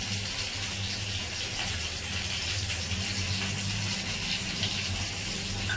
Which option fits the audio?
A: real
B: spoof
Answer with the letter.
A